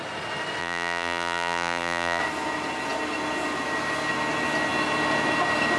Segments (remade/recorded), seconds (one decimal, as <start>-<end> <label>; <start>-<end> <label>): 0.0-0.6 recorded; 0.6-2.2 remade; 2.2-5.8 recorded